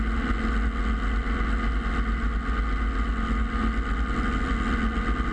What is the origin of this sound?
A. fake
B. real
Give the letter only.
B